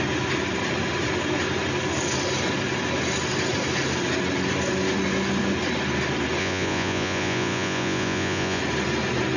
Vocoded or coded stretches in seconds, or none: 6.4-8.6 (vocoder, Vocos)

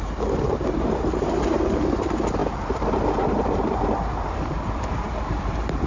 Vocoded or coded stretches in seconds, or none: 0.0-5.9 (vocoder, BigVGAN v2)

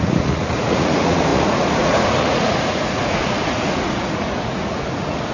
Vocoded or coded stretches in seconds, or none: 0.0-5.3 (vocoder, Vocos)